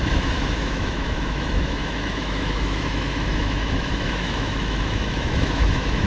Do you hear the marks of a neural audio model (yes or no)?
yes